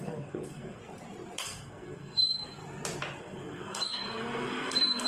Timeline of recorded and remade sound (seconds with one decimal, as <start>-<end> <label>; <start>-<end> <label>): 0.0-0.8 remade; 0.8-1.4 recorded; 1.4-2.6 remade; 2.6-3.2 recorded; 3.2-5.1 remade